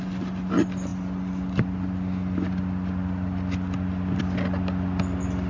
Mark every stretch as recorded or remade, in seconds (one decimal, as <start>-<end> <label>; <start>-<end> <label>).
0.0-5.5 recorded